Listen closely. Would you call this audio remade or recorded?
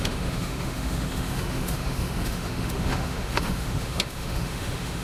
remade